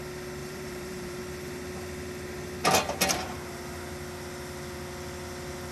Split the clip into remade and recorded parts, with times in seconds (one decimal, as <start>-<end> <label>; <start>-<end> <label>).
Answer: 0.0-0.4 recorded; 0.4-1.2 remade; 1.2-5.7 recorded